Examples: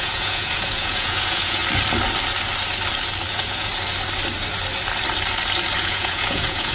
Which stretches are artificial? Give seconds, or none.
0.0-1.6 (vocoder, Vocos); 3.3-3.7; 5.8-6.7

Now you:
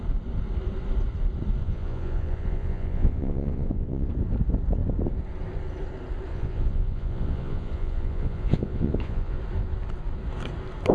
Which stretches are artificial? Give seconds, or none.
1.6-4.1 (vocoder, Vocos); 6.3-9.4